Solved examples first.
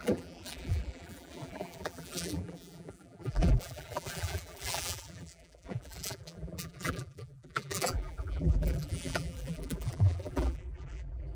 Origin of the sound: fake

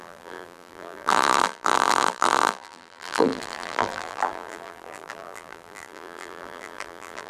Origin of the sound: fake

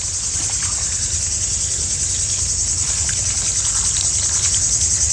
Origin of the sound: real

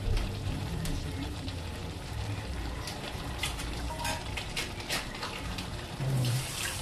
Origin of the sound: fake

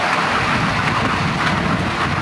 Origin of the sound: real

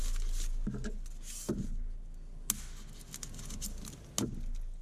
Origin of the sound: real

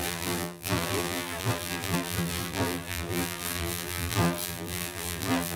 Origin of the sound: fake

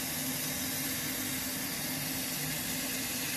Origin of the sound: real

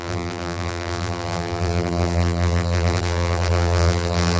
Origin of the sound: fake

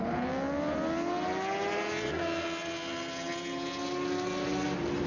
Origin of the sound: real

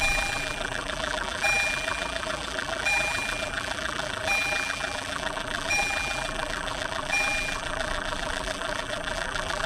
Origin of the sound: fake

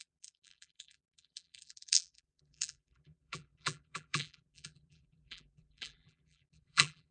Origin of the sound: fake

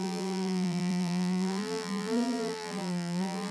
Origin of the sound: fake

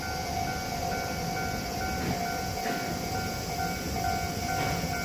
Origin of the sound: real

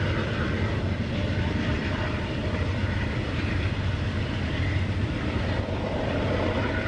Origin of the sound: fake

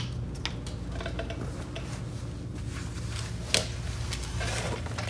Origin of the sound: real